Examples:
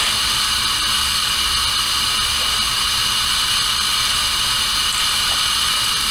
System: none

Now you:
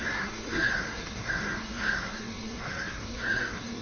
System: codec, SNAC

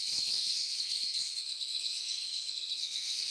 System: codec, SNAC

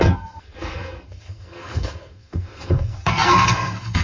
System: codec, SNAC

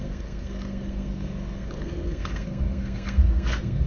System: codec, SNAC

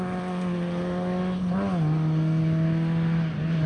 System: none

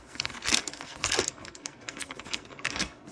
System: codec, SNAC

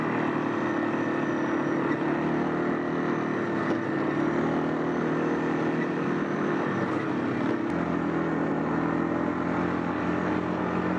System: none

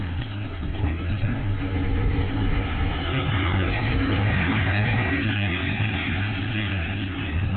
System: codec, SNAC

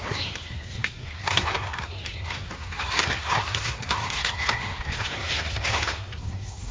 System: codec, SNAC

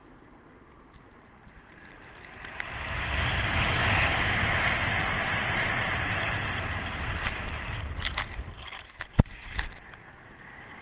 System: none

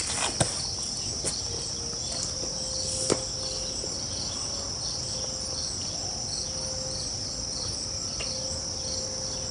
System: none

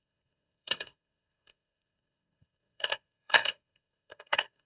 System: codec, SNAC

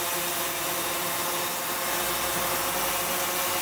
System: none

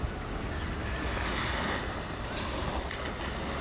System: none